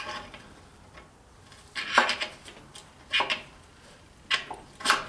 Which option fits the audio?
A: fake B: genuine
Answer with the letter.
B